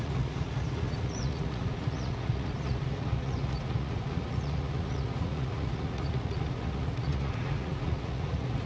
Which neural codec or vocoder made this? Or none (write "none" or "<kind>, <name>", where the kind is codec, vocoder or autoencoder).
vocoder, Vocos